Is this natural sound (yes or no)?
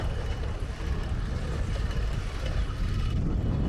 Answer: yes